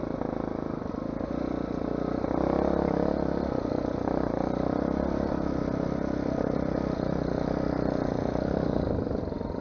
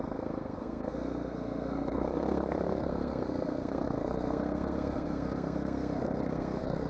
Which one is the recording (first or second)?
first